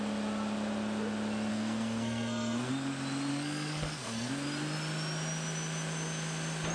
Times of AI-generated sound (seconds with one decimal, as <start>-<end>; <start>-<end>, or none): 1.5-2.7; 3.3-4.3